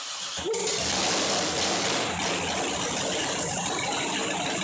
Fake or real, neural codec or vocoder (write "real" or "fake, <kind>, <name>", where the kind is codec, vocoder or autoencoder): real